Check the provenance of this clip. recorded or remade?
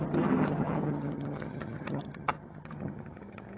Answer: remade